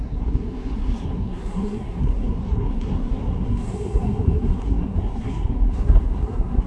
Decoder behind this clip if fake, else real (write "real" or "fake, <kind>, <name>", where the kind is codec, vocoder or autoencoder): fake, codec, SNAC